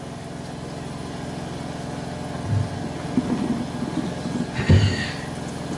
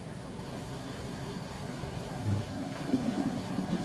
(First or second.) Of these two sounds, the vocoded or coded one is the second